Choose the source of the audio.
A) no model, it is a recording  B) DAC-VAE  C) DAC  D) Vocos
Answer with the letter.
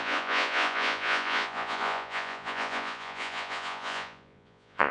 D